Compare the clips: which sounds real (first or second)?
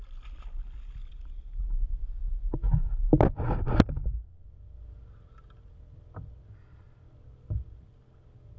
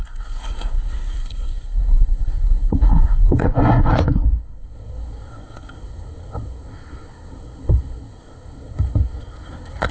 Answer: first